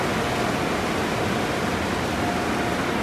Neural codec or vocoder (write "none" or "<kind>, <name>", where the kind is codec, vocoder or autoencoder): none